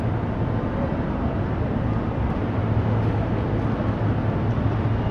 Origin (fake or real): real